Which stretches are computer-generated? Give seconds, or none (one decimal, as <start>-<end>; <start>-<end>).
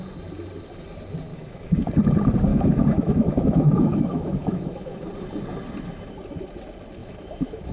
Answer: 1.3-1.9; 2.5-5.1; 7.0-7.7